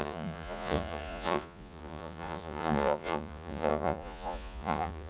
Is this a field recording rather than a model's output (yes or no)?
no